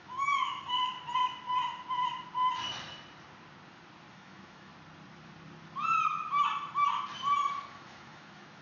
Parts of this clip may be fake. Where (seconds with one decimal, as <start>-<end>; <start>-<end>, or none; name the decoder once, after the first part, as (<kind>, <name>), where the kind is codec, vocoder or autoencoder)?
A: 0.0-0.9 (autoencoder, DAC-VAE); 4.1-4.7; 7.7-8.6